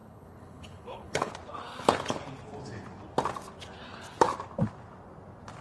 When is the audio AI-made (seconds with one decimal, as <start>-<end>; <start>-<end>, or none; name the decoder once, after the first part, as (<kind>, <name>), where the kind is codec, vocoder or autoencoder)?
0.0-1.3 (codec, HILCodec)